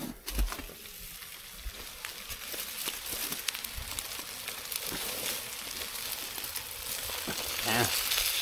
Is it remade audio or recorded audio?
recorded